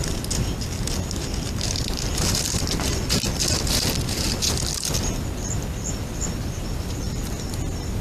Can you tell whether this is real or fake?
real